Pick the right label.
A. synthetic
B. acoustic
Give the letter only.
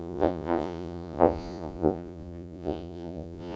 A